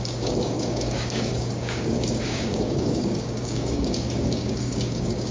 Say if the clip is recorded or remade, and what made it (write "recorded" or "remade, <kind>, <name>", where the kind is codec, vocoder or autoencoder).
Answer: remade, codec, DAC